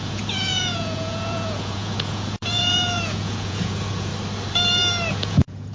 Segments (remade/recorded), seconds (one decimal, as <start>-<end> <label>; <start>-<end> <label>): 0.0-4.1 remade; 4.1-5.1 recorded; 5.1-5.7 remade